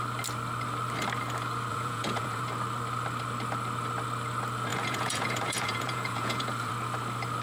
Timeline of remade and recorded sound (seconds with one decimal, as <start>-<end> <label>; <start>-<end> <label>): 0.0-1.7 recorded; 1.7-2.4 remade; 2.4-4.7 recorded; 4.7-6.7 remade; 6.7-7.4 recorded

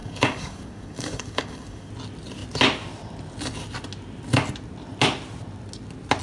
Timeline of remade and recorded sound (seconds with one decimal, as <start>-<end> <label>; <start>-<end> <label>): 0.0-1.9 remade; 1.9-6.2 recorded

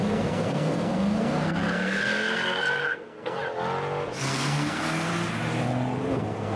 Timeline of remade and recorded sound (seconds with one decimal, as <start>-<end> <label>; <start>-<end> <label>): 0.0-3.4 remade; 3.4-4.2 recorded; 4.2-5.1 remade; 5.1-6.1 recorded; 6.1-6.6 remade